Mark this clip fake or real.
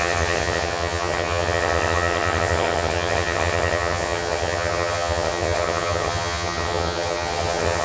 fake